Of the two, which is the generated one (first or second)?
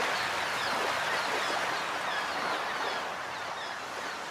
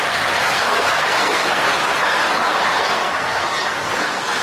second